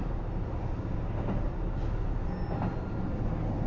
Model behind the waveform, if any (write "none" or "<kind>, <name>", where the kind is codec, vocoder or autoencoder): none